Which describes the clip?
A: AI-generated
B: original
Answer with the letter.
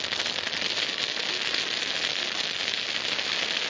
B